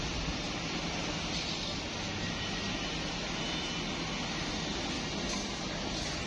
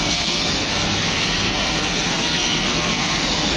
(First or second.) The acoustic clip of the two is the first